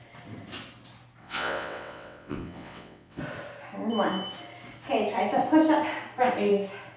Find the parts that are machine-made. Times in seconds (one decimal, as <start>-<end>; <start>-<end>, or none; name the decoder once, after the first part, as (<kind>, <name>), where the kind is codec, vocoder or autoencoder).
1.2-3.2 (vocoder, WaveNeXt)